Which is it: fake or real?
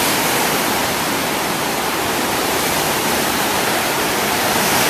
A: fake